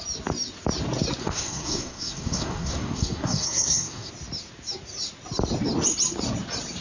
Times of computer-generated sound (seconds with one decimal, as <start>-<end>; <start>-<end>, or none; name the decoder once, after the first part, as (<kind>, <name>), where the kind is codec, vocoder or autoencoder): 1.2-4.1 (codec, SNAC)